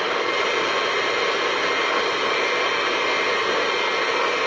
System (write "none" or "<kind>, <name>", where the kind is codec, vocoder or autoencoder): none